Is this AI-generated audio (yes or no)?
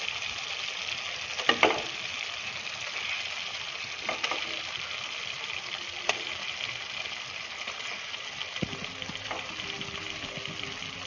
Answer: no